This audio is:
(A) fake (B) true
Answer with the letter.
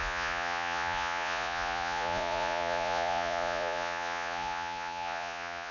A